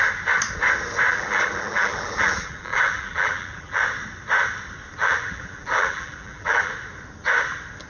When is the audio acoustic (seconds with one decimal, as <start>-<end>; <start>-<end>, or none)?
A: 0.0-1.1; 3.8-5.0; 6.7-7.9